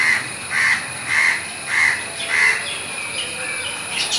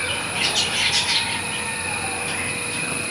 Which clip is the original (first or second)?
first